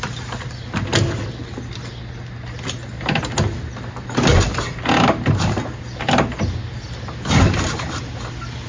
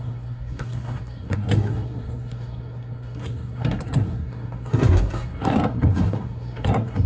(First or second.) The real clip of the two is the first